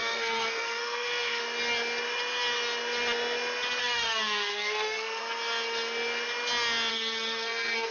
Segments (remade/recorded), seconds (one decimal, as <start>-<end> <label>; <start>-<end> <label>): 0.0-1.4 remade; 1.4-3.8 recorded; 3.8-5.2 remade; 5.2-6.9 recorded; 6.9-7.9 remade